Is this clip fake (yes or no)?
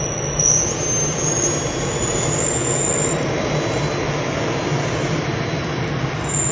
no